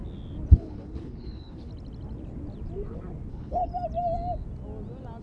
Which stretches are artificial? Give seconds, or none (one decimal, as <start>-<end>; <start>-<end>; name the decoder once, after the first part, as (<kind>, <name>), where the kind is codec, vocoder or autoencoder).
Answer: 0.5-1.7 (codec, HILCodec); 3.3-3.7

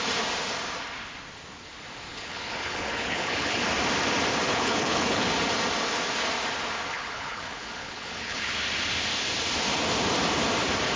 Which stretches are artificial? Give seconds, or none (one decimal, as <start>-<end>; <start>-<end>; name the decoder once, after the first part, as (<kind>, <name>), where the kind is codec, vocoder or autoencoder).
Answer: 2.1-3.6 (codec, HILCodec); 4.5-5.3; 6.9-8.5